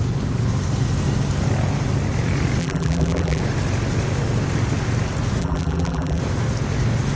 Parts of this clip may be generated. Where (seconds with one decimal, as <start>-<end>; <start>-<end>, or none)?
2.6-3.4; 5.4-6.2